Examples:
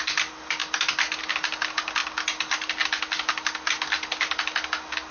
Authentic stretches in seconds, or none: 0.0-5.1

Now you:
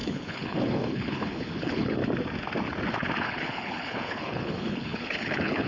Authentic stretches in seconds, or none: 2.0-3.2

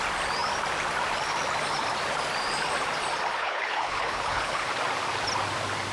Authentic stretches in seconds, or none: 0.0-3.4; 4.7-5.9

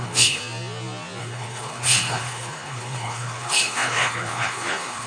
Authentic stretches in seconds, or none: 0.4-1.2

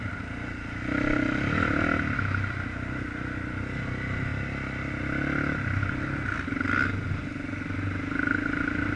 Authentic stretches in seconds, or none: 0.0-9.0

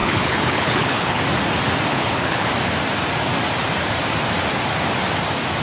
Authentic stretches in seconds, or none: 1.2-1.9; 2.5-5.6

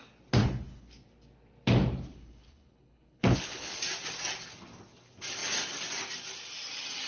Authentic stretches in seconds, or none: 0.0-0.4; 0.9-2.1; 3.8-7.1

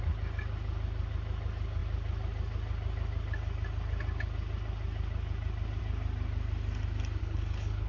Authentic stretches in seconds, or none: 0.0-7.2